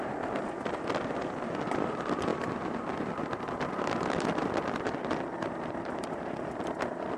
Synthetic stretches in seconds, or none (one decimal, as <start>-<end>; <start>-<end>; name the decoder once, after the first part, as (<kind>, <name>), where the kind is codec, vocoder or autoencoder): 0.0-2.3 (vocoder, BigVGAN v2); 2.9-7.2